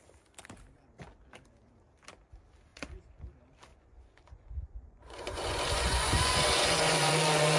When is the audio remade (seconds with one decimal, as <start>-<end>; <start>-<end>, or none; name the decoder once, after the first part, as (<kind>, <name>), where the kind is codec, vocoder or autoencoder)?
2.7-3.2 (vocoder, Vocos); 3.7-7.1